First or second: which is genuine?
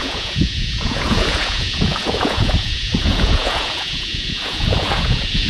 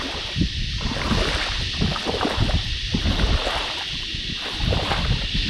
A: second